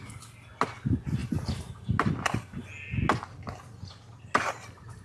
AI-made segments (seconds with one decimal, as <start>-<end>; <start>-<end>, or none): none